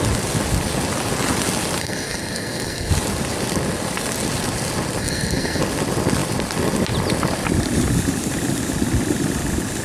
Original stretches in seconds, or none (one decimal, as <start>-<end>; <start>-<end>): 0.0-1.8; 2.9-5.0; 5.6-9.8